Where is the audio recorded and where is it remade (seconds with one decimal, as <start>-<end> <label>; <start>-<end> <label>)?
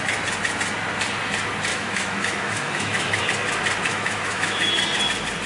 0.0-1.7 recorded; 1.7-3.2 remade; 3.2-3.9 recorded; 3.9-4.8 remade; 4.8-5.5 recorded